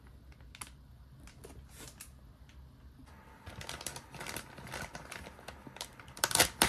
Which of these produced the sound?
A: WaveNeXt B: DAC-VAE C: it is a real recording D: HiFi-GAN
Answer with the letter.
C